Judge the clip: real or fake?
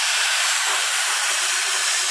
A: fake